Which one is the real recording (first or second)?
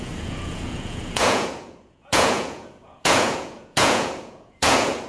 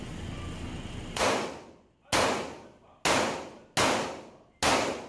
second